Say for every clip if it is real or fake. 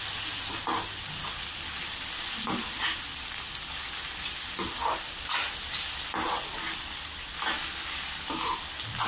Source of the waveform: real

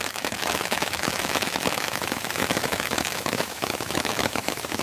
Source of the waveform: fake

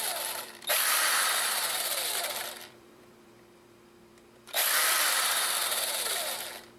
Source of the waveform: fake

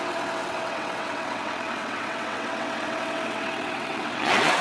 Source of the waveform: fake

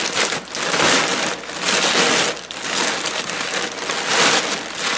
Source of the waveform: real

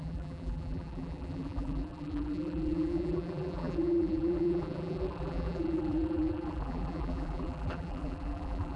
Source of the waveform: fake